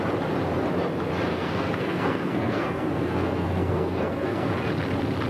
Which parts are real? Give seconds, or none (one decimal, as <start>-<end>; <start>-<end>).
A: 0.0-1.3; 4.5-5.3